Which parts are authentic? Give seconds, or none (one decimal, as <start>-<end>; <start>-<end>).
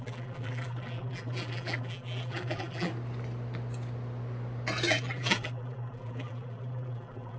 2.9-4.9